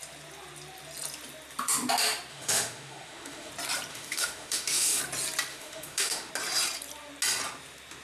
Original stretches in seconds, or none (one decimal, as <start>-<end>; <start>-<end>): 0.0-2.3; 3.5-3.9; 5.0-5.5; 6.3-8.0